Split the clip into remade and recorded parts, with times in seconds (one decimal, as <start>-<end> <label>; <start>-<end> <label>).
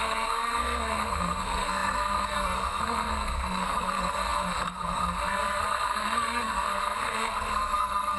0.0-8.2 remade